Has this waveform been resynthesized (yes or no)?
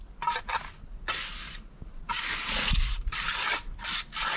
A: no